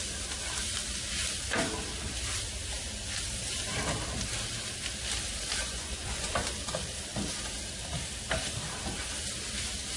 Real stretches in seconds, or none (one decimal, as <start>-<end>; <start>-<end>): 0.0-5.6; 6.3-10.0